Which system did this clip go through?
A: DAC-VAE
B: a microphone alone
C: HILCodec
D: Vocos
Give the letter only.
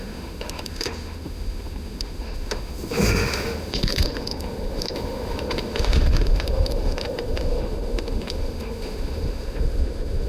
A